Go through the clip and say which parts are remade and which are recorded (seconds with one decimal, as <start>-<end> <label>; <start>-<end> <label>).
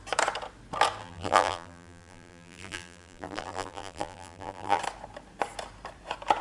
0.0-1.0 recorded; 1.0-4.8 remade; 4.8-6.4 recorded